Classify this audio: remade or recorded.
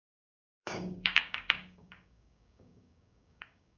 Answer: remade